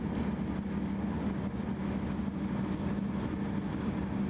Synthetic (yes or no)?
no